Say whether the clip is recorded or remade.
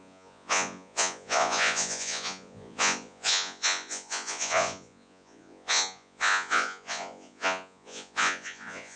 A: remade